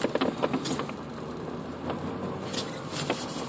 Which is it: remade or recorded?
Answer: recorded